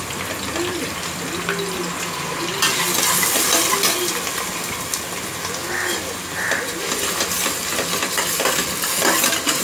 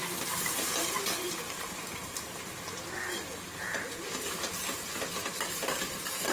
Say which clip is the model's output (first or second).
second